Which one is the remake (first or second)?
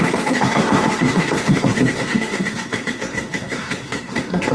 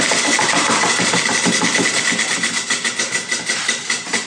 first